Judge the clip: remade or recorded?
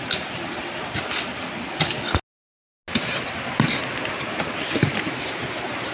recorded